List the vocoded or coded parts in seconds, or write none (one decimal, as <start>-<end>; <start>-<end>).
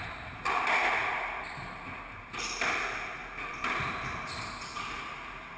none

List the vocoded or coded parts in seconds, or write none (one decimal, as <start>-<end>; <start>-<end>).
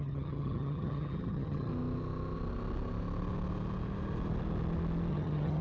0.0-1.7; 5.1-5.6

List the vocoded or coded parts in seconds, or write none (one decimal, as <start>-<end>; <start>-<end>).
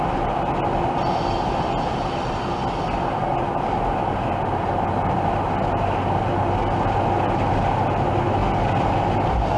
none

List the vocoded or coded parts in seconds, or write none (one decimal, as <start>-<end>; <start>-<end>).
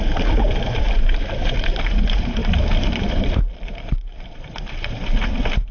0.0-5.7